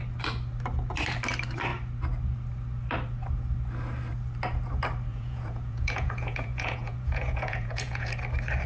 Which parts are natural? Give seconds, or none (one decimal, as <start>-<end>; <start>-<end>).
0.0-5.1; 8.1-8.7